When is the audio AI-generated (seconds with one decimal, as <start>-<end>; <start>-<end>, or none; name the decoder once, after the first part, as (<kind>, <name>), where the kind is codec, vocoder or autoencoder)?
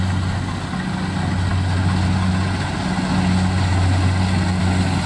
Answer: none